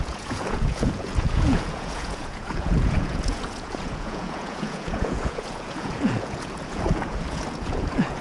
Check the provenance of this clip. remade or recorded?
remade